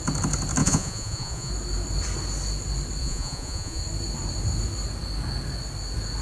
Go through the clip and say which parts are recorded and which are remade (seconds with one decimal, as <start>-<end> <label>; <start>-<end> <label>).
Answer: 0.0-0.6 recorded; 0.6-1.5 remade; 1.5-3.0 recorded; 3.0-3.8 remade; 3.8-6.2 recorded